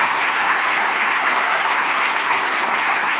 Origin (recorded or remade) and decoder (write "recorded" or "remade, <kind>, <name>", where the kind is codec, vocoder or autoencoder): remade, codec, SNAC